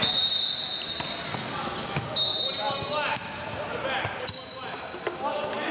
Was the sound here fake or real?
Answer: real